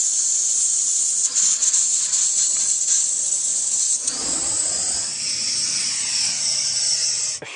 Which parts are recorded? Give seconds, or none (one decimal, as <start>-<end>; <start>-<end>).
0.0-7.6